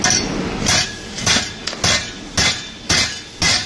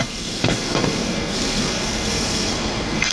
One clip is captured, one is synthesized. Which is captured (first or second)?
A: first